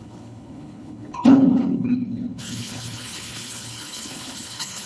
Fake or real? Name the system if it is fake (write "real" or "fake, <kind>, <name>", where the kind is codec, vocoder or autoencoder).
fake, codec, HILCodec